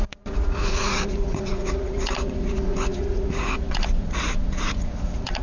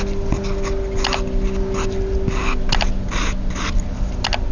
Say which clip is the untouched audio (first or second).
second